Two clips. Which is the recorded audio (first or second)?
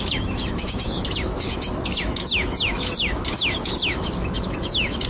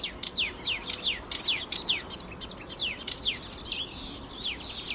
second